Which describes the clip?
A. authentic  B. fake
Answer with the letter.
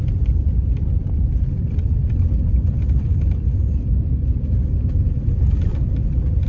B